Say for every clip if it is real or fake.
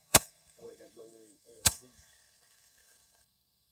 fake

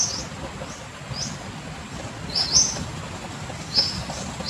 real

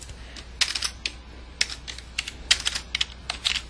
real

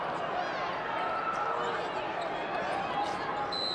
real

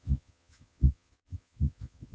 fake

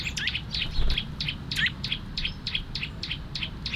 real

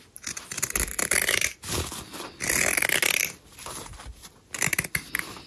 real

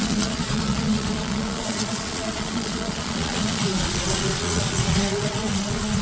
fake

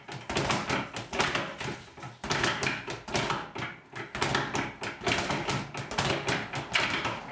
real